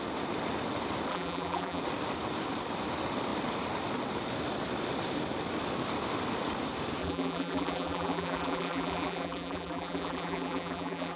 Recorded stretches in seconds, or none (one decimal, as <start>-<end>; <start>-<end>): 0.0-1.1; 1.8-7.0